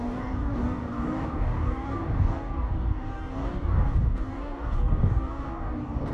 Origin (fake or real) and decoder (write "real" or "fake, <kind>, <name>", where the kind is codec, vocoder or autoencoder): fake, codec, DAC